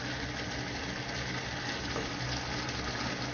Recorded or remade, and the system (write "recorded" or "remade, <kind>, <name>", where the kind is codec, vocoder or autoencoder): recorded